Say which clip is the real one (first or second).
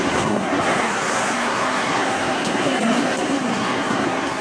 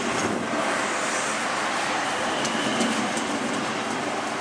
second